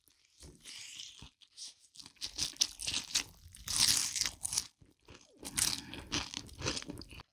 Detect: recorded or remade recorded